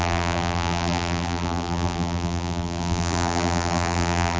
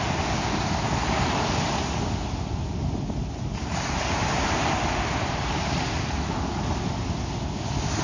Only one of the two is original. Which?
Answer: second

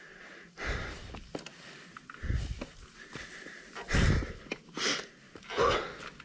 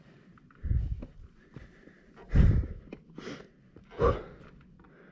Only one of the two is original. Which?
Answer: first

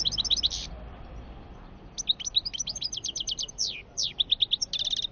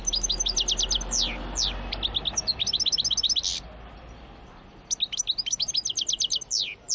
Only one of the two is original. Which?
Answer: second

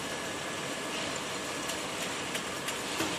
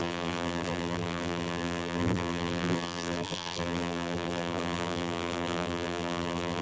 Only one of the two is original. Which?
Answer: first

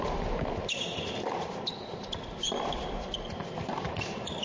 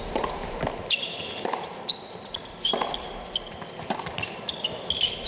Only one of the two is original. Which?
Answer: second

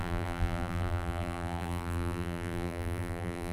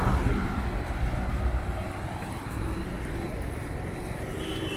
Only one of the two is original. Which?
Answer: second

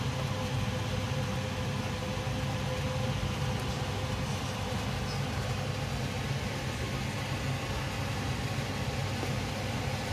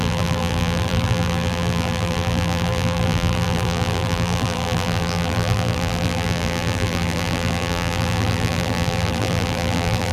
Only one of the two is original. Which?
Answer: first